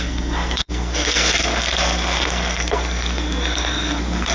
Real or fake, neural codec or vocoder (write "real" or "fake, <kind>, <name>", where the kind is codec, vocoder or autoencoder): fake, codec, SNAC